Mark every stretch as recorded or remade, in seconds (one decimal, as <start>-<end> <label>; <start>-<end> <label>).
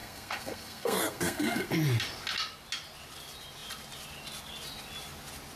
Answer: 0.0-1.7 remade; 1.7-5.6 recorded